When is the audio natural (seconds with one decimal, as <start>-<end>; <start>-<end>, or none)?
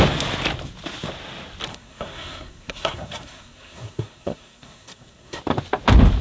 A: 0.0-1.7; 5.4-6.2